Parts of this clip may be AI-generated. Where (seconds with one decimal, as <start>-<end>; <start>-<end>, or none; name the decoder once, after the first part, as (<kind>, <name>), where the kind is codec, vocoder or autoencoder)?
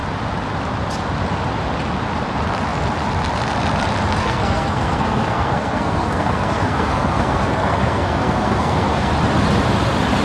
4.2-9.1 (codec, SNAC)